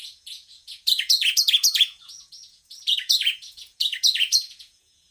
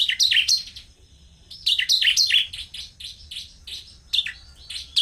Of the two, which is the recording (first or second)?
second